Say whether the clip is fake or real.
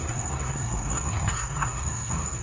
fake